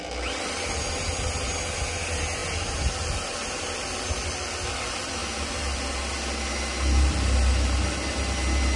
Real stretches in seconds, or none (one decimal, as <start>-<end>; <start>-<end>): 0.0-8.8